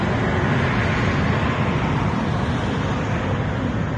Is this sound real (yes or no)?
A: yes